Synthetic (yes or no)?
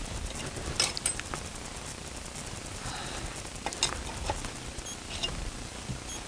no